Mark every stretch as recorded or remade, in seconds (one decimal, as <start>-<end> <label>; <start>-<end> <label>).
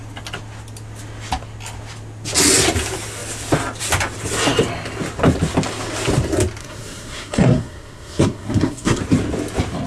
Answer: 0.0-6.6 recorded; 6.6-9.0 remade; 9.0-9.9 recorded